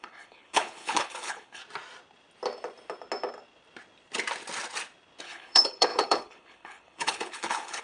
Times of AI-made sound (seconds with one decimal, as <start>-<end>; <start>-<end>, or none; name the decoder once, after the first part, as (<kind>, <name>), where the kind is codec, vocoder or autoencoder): 0.0-1.6 (codec, HILCodec); 5.2-7.8